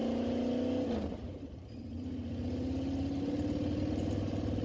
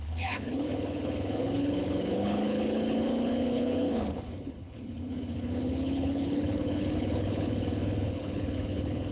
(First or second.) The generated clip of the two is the second